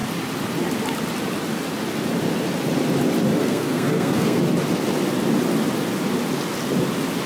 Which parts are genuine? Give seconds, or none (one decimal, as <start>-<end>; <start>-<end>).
0.0-3.4; 4.4-7.3